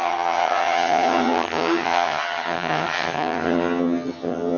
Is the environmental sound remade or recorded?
remade